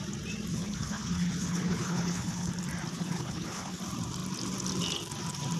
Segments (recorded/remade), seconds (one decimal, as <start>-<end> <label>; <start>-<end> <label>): 0.0-0.5 recorded; 0.5-2.5 remade; 2.5-2.9 recorded; 2.9-3.8 remade; 3.8-5.6 recorded